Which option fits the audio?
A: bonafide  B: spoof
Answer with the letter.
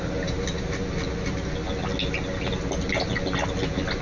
A